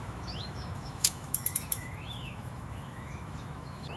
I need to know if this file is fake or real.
fake